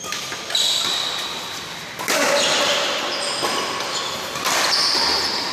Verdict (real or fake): real